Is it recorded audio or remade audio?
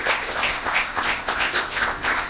remade